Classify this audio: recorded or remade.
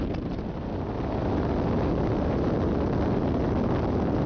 recorded